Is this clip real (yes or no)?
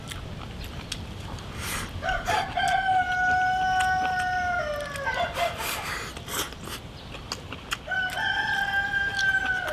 yes